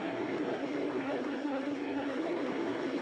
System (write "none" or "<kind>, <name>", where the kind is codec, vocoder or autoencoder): codec, SNAC